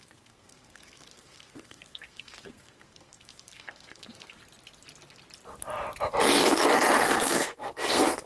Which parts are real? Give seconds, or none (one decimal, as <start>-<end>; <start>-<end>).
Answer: 4.4-7.0